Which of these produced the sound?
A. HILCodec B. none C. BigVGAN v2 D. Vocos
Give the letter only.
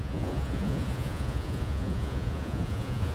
D